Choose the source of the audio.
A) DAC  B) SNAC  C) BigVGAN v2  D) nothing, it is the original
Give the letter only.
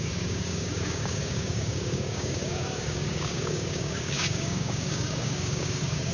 A